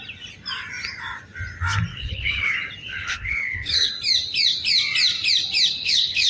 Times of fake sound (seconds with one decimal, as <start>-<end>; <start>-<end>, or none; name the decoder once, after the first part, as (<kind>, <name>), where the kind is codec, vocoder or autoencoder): 1.9-2.5 (codec, HILCodec); 2.9-3.9; 5.8-6.3